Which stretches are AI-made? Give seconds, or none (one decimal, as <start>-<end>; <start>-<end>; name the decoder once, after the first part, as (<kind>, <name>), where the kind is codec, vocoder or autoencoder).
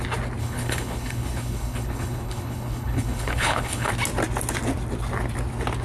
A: 0.4-3.9 (codec, HILCodec)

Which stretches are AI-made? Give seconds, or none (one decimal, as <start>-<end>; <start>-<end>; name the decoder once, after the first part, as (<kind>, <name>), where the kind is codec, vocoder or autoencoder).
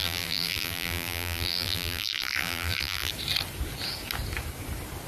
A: 0.0-3.1 (vocoder, BigVGAN v2)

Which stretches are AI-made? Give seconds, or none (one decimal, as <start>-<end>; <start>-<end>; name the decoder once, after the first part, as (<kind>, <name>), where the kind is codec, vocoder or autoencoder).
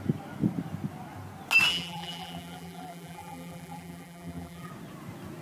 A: 1.7-4.7 (vocoder, BigVGAN v2)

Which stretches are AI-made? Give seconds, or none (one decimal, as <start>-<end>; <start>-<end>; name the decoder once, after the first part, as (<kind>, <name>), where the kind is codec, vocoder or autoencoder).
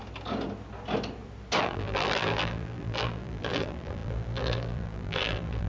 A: 1.6-5.7 (vocoder, BigVGAN v2)